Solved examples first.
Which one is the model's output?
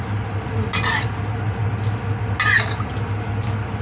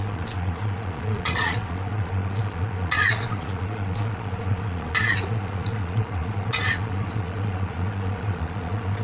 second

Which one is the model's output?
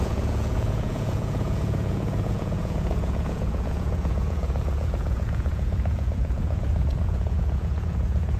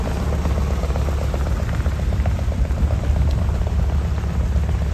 first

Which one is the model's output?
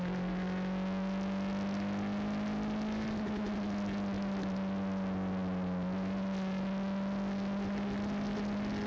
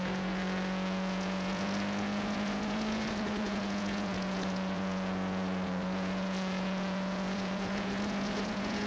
second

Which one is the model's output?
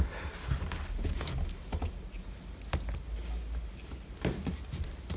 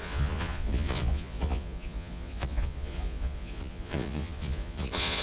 second